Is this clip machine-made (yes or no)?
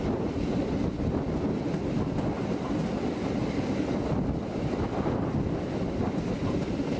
no